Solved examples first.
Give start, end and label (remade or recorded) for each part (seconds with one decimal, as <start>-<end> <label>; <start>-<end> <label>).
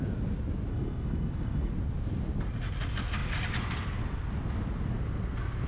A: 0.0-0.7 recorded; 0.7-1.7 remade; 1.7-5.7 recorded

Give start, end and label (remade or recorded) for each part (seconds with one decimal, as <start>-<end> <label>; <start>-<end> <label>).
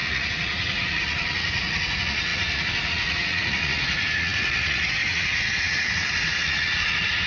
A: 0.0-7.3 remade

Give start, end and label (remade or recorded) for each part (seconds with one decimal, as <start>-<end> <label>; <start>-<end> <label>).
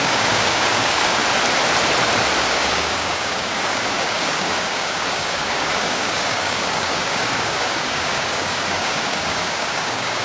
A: 0.0-1.2 remade; 1.2-2.4 recorded; 2.4-10.2 remade